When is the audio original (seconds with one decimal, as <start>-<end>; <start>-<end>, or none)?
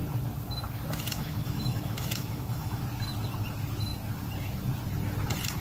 0.0-1.1; 2.8-5.6